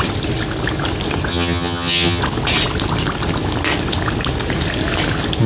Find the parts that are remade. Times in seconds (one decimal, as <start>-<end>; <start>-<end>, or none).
1.3-2.2